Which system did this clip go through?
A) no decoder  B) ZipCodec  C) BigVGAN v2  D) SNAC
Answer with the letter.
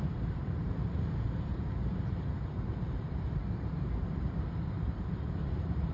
C